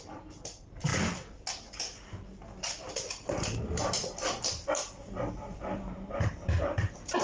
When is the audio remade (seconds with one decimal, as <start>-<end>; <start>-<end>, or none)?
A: none